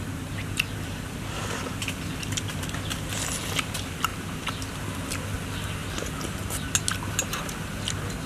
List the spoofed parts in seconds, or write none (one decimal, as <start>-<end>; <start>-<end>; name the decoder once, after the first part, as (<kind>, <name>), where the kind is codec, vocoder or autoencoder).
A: none